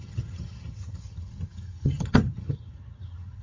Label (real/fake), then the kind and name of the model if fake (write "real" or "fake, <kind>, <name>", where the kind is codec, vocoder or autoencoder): fake, vocoder, HiFi-GAN